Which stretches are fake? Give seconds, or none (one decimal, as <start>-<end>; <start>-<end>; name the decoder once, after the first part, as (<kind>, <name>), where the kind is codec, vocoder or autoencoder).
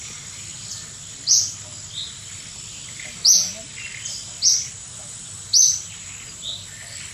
none